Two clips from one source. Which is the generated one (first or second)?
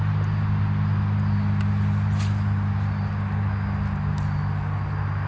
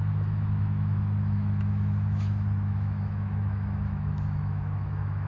second